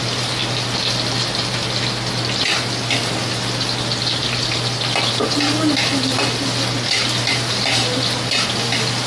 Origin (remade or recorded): recorded